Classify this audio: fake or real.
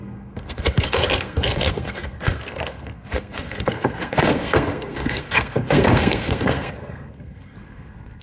fake